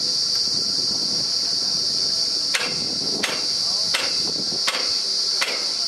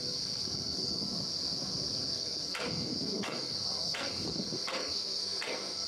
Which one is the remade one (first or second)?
second